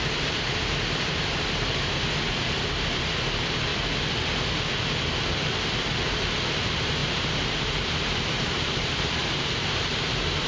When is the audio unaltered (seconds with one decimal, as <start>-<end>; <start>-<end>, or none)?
3.7-6.6